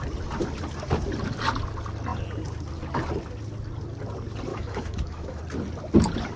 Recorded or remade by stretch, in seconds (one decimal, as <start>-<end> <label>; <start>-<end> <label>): 0.0-4.5 recorded; 4.5-5.4 remade; 5.4-6.4 recorded